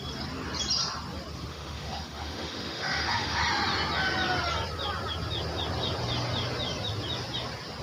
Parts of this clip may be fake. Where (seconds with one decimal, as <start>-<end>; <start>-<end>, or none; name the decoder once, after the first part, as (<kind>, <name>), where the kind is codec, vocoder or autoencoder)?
1.5-3.4 (autoencoder, DAC-VAE)